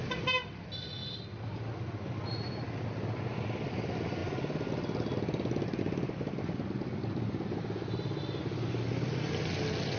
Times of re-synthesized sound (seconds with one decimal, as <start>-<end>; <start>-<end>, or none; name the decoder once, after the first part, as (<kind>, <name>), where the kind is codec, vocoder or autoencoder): none